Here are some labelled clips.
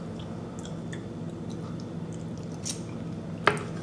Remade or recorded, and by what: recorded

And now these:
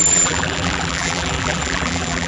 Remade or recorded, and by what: remade, vocoder, BigVGAN v2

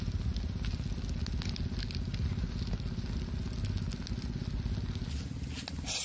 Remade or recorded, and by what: recorded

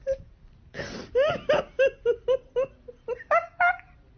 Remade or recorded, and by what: recorded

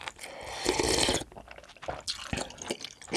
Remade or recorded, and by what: recorded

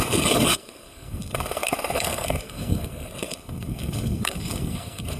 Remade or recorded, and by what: remade, codec, SNAC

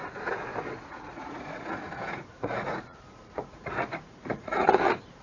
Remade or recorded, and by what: remade, vocoder, Vocos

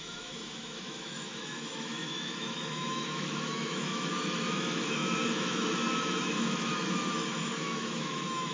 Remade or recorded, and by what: remade, autoencoder, DAC-VAE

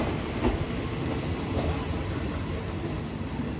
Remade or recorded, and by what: recorded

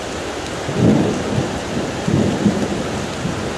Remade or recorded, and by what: recorded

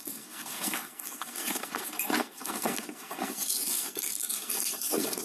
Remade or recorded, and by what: remade, codec, SNAC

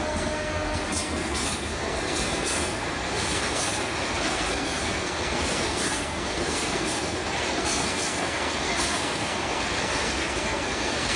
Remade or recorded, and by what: remade, codec, SNAC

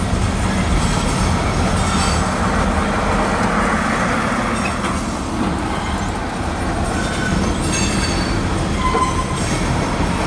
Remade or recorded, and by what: recorded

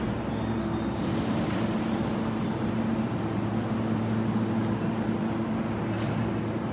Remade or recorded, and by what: recorded